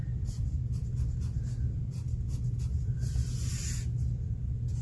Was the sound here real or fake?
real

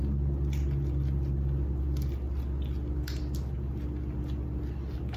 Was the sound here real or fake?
real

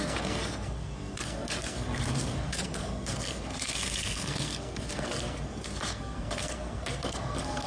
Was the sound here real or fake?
fake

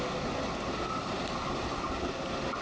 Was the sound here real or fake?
real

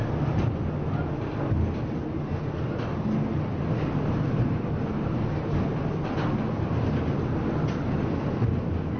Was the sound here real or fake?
real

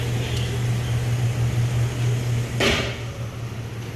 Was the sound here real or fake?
real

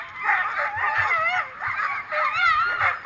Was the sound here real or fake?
real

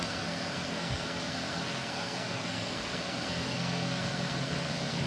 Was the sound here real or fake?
fake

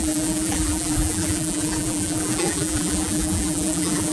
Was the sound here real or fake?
fake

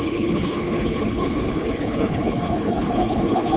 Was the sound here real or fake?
fake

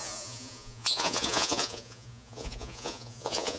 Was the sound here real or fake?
fake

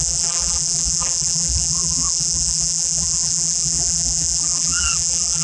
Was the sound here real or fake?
fake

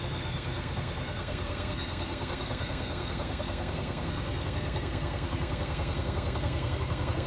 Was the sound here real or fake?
fake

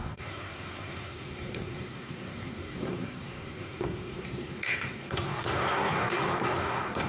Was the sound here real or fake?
fake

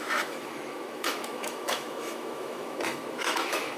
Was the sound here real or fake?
fake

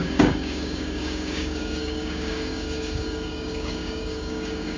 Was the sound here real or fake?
fake